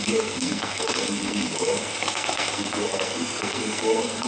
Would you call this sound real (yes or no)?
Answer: no